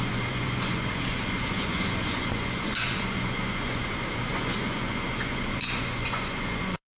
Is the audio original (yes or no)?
no